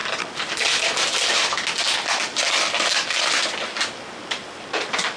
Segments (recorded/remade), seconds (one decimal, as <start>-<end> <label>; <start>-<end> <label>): 0.0-5.2 recorded